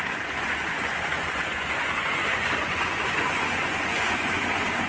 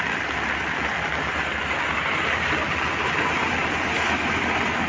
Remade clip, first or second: first